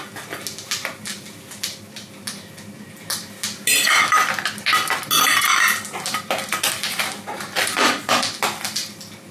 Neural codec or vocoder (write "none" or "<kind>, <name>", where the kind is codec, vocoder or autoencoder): none